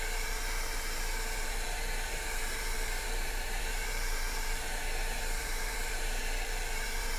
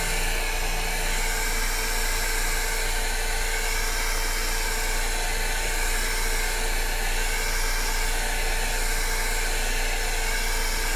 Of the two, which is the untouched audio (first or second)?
second